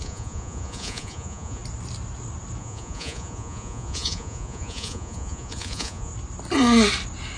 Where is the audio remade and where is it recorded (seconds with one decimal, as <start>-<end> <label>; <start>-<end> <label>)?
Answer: 0.0-1.6 remade; 1.6-2.6 recorded; 2.6-6.1 remade; 6.1-7.4 recorded